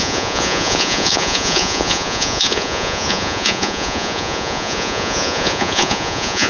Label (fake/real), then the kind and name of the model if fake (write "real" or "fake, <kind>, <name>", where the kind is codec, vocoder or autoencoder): fake, vocoder, Vocos